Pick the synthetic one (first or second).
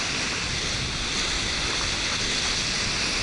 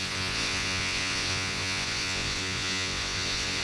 second